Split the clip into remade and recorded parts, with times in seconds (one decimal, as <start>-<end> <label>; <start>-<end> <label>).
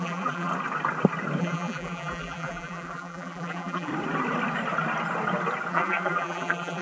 0.0-0.5 remade; 0.5-1.4 recorded; 1.4-3.9 remade; 3.9-5.7 recorded; 5.7-6.8 remade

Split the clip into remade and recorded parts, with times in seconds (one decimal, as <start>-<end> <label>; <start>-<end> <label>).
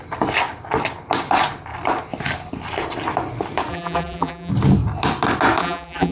0.0-3.7 recorded; 3.7-4.5 remade; 4.5-5.6 recorded; 5.6-6.1 remade